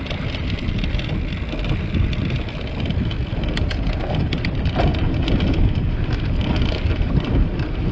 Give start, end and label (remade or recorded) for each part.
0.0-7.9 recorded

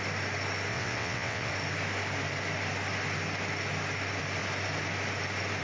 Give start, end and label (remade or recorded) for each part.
0.0-0.7 recorded; 0.7-1.5 remade; 1.5-5.6 recorded

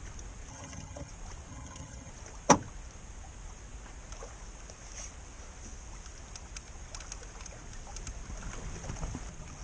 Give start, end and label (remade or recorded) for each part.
0.0-0.5 recorded; 0.5-1.1 remade; 1.1-1.5 recorded; 1.5-2.1 remade; 2.1-9.6 recorded